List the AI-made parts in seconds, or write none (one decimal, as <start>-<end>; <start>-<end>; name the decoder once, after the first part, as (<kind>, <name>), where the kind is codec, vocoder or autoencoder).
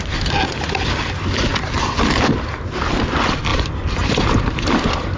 3.5-5.2 (vocoder, BigVGAN v2)